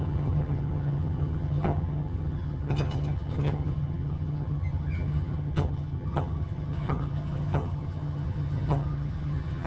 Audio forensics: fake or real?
fake